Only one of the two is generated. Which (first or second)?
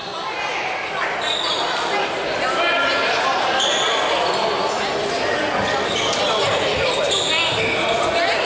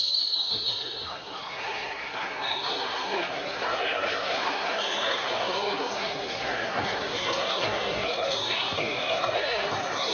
second